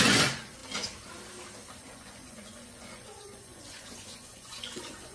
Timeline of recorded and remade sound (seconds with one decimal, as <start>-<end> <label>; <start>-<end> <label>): 0.0-0.6 remade; 0.6-1.7 recorded; 1.7-5.1 remade